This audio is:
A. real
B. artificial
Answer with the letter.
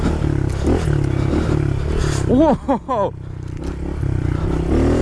A